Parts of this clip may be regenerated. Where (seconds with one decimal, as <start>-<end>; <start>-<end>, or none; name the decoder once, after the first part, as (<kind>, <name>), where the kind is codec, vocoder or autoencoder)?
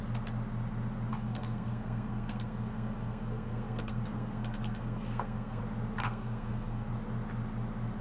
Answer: 1.1-5.6 (codec, SNAC); 6.0-6.9